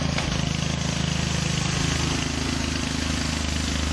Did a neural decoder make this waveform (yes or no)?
no